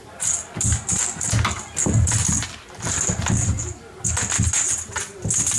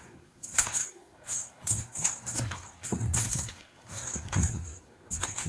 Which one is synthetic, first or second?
second